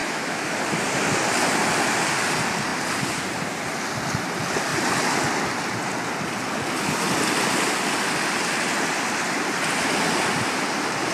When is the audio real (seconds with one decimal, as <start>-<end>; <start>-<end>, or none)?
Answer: 0.6-11.1